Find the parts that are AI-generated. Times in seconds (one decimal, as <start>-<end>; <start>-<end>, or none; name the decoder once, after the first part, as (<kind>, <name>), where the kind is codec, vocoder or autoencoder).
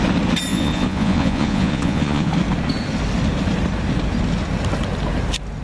0.5-2.3 (vocoder, Vocos)